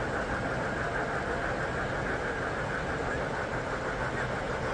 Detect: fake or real real